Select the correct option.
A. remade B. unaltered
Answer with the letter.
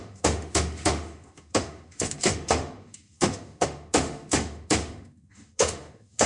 A